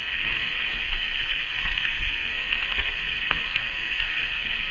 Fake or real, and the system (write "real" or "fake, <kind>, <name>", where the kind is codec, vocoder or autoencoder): fake, codec, SNAC